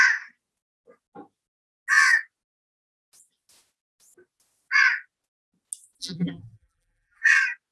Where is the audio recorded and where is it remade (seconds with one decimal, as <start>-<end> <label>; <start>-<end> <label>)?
0.0-6.0 recorded; 6.0-7.2 remade; 7.2-7.7 recorded